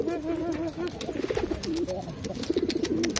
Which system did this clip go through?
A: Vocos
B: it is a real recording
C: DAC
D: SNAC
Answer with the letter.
B